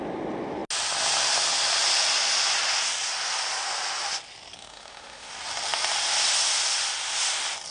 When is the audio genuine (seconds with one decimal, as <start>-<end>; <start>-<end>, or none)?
0.0-4.6; 5.3-7.7